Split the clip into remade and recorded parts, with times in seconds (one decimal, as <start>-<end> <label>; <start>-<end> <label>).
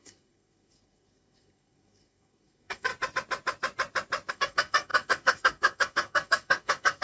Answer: 0.0-2.9 remade; 2.9-4.3 recorded; 4.3-7.0 remade